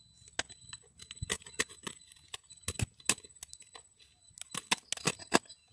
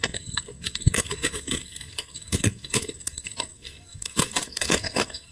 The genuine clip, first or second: first